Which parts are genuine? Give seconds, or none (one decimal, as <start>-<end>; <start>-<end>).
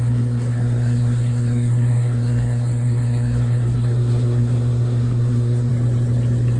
5.7-6.6